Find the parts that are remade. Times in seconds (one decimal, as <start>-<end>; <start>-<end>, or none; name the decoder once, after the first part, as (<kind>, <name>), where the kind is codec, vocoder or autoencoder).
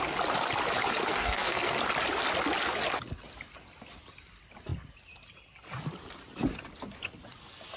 1.0-1.8 (codec, SNAC)